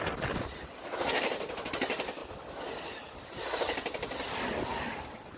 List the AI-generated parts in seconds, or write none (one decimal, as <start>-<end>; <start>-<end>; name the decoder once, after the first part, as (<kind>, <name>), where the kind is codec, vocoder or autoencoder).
none